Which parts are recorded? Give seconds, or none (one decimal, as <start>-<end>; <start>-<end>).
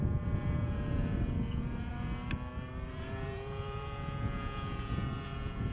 1.9-2.9